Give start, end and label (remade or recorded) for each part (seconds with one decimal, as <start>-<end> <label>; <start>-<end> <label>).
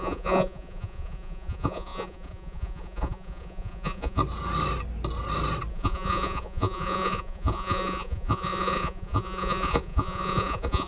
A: 0.0-4.2 remade; 4.2-5.7 recorded; 5.7-10.9 remade